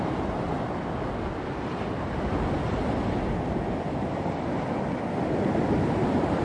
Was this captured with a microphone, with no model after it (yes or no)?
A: yes